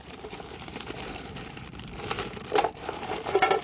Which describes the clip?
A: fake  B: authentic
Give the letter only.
A